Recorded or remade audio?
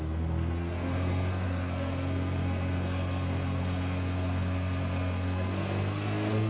remade